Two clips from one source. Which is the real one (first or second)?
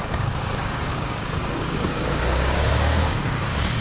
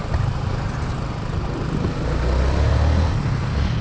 second